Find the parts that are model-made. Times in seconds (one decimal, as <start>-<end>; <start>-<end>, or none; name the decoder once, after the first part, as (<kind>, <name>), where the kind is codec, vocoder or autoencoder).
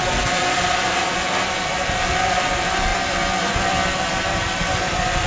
0.0-5.3 (vocoder, BigVGAN v2)